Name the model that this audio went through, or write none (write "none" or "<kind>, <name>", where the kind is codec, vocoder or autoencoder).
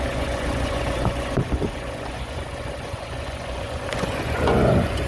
vocoder, Vocos